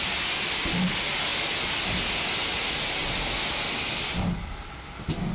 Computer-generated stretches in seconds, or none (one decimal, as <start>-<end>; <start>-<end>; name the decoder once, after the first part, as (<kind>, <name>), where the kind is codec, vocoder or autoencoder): none